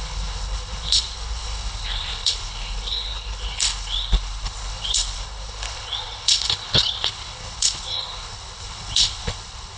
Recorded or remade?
remade